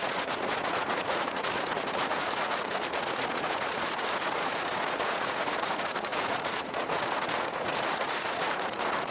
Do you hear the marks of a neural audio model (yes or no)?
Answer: yes